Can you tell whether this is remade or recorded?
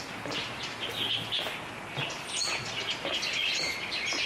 recorded